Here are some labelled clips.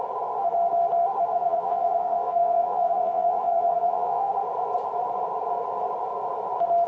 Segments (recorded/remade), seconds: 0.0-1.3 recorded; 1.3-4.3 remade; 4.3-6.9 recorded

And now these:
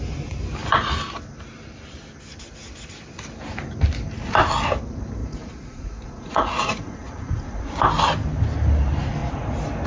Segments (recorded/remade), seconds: 0.0-5.2 recorded; 5.2-7.6 remade; 7.6-9.9 recorded